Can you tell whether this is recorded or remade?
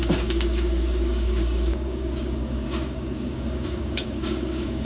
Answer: remade